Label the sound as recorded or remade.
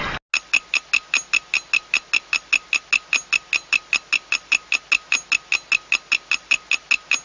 recorded